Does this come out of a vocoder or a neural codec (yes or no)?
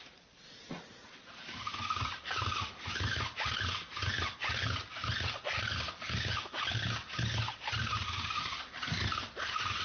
no